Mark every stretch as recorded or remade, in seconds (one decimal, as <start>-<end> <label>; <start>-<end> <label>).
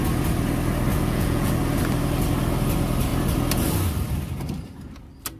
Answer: 0.0-0.9 recorded; 0.9-1.5 remade; 1.5-5.4 recorded